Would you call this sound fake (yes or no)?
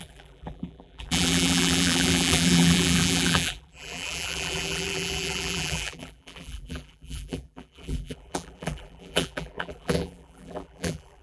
yes